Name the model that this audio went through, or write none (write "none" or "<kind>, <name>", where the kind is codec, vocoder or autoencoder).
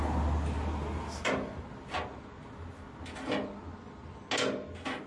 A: none